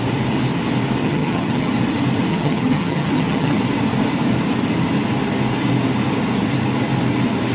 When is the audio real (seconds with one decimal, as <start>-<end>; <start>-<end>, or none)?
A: 0.0-1.0; 1.7-2.3; 3.6-7.5